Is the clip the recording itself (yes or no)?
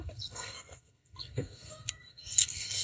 no